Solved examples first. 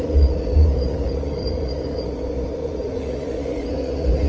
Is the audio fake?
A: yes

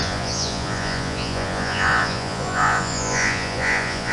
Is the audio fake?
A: yes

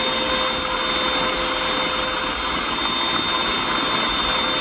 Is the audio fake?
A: no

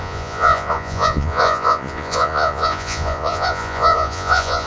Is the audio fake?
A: yes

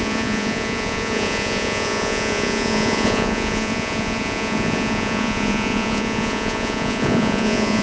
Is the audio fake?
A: yes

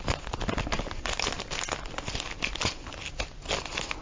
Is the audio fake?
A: no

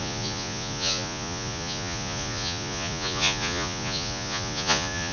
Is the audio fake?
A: yes